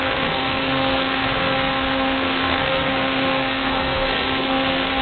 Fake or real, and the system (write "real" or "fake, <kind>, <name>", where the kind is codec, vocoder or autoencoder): fake, codec, SNAC